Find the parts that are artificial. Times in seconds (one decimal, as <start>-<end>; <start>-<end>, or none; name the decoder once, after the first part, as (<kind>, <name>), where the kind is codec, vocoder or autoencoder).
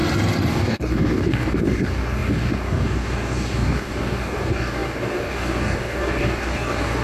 0.5-7.0 (codec, DAC)